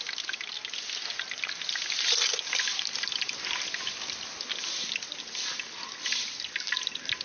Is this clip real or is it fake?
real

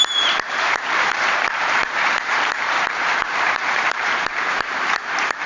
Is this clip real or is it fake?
fake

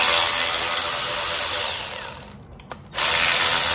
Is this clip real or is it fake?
real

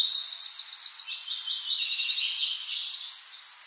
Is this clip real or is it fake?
real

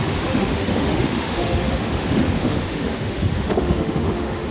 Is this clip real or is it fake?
fake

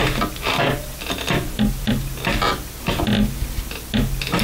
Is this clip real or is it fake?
real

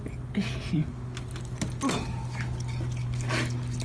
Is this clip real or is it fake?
real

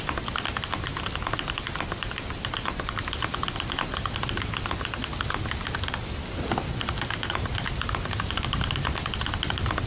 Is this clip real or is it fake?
real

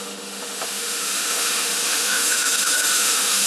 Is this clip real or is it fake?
fake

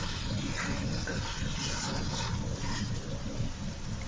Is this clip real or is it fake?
real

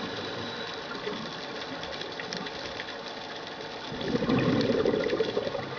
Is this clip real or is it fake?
real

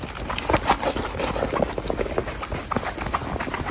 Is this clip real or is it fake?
real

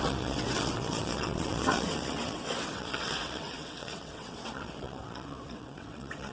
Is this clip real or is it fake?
fake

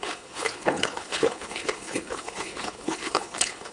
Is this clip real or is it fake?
fake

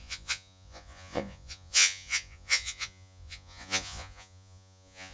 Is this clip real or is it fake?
fake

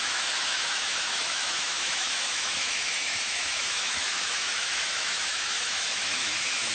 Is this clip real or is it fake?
fake